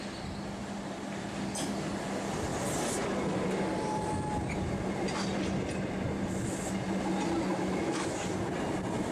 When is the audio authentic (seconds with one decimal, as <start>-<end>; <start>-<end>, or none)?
0.0-7.5; 8.2-9.1